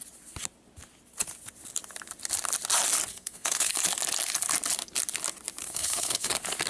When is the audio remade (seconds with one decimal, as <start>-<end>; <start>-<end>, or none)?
3.1-3.7; 5.6-6.3